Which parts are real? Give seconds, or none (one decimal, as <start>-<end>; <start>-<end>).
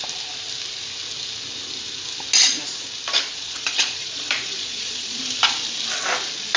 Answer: 0.0-3.3; 5.2-6.6